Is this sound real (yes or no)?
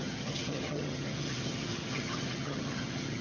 no